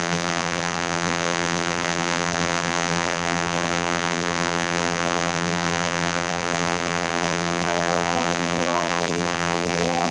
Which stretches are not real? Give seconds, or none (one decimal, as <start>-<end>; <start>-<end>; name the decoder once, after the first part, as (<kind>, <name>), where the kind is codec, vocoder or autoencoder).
0.0-10.1 (vocoder, BigVGAN v2)